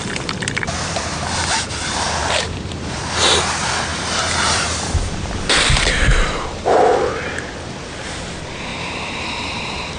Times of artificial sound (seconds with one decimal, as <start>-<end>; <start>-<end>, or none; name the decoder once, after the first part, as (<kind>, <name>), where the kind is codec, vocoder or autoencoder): 2.2-3.0 (vocoder, BigVGAN v2); 3.9-6.9; 8.7-9.3